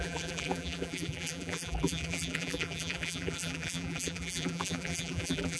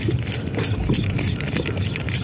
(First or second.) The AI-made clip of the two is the first